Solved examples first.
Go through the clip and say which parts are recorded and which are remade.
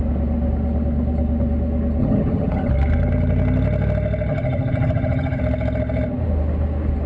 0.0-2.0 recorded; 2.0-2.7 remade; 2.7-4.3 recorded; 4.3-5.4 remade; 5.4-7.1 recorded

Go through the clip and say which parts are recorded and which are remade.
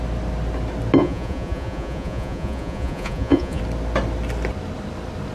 0.0-1.0 recorded; 1.0-3.6 remade; 3.6-5.3 recorded